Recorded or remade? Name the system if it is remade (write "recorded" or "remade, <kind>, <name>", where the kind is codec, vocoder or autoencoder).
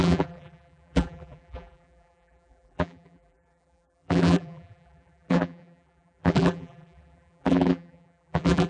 remade, vocoder, BigVGAN v2